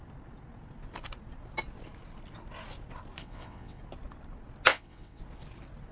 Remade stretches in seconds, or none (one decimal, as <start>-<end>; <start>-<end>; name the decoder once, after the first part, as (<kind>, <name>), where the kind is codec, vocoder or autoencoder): 3.2-3.8 (vocoder, WaveNeXt); 4.7-5.2